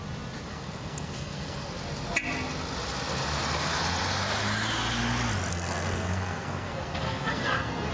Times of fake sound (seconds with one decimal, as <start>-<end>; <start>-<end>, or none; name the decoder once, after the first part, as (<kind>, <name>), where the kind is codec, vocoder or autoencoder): 0.5-1.7 (codec, SNAC); 5.5-7.9